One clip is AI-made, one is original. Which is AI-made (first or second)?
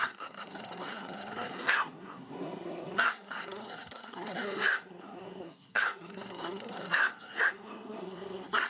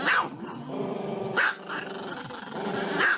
first